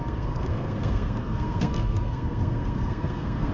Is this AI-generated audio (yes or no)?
yes